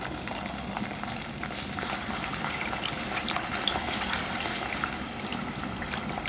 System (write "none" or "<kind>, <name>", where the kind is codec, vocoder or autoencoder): none